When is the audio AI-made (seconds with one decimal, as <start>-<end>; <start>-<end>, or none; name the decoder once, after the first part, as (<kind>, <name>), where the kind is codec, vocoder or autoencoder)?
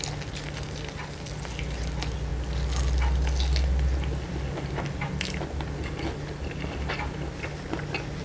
none